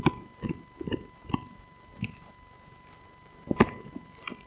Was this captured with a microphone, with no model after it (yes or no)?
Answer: yes